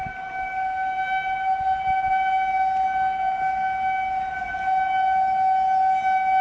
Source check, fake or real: real